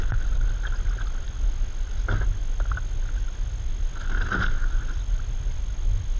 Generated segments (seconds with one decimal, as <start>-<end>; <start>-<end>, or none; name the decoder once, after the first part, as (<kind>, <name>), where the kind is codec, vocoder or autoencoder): none